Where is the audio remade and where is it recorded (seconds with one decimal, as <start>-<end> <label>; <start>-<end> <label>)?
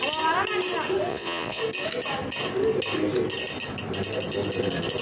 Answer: 0.0-1.1 recorded; 1.1-1.6 remade; 1.6-5.0 recorded